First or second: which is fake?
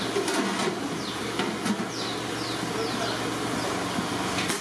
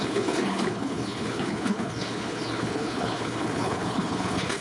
second